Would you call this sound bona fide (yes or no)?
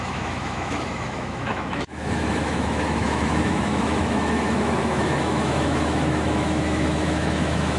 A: no